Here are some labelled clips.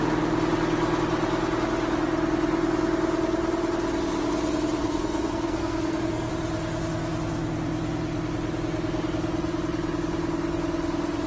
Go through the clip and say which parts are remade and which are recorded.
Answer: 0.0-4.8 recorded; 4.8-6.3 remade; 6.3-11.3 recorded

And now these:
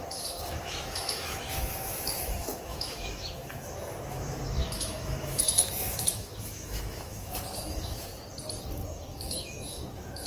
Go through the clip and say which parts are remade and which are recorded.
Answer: 0.0-8.1 remade; 8.1-8.9 recorded; 8.9-10.3 remade

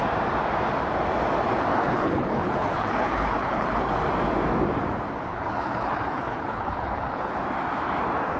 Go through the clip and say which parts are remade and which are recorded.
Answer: 0.0-1.7 recorded; 1.7-3.9 remade; 3.9-5.3 recorded; 5.3-7.3 remade; 7.3-8.4 recorded